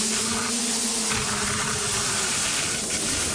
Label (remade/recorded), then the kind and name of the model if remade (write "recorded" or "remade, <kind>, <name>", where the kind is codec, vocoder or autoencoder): recorded